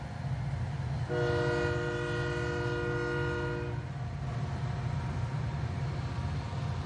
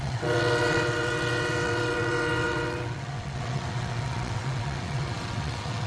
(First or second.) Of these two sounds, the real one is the first